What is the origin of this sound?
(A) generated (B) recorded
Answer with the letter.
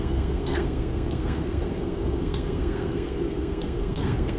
A